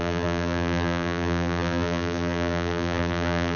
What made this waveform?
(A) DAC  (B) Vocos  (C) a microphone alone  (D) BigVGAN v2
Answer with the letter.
D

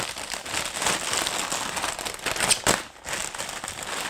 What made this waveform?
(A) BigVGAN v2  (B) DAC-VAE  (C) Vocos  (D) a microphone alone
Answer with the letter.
D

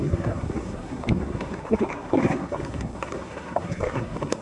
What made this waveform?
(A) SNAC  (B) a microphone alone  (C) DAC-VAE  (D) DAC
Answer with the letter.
A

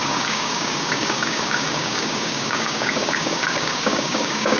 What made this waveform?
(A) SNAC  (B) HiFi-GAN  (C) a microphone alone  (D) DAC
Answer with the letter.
D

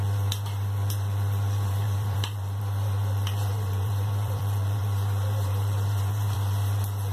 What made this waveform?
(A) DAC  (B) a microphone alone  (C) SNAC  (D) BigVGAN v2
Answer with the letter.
D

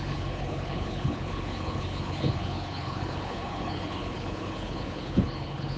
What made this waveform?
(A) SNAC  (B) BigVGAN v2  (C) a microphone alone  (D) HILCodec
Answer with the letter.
D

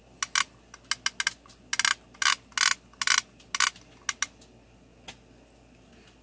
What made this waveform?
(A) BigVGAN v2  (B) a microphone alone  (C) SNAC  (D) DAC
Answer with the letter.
B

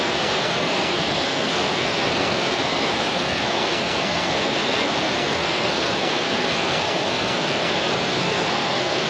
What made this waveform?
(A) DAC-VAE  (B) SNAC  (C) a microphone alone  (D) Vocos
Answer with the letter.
B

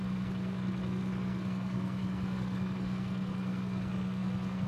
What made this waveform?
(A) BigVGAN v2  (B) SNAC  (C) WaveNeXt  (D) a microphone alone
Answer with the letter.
B